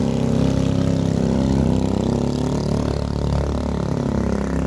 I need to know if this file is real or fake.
real